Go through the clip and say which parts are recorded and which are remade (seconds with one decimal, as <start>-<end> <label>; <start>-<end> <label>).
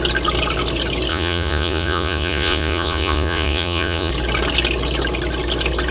0.0-1.1 recorded; 1.1-4.1 remade; 4.1-5.9 recorded